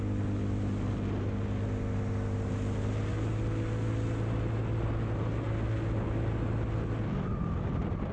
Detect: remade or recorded recorded